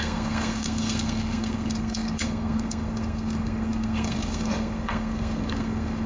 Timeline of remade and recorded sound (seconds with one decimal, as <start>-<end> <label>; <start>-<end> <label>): 0.0-6.1 remade

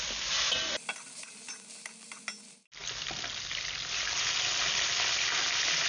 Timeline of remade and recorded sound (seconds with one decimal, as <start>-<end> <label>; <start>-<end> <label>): 0.0-5.9 recorded